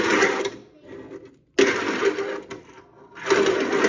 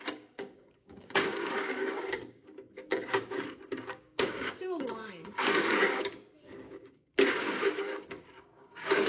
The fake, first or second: second